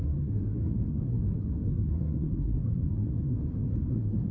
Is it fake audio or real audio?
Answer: fake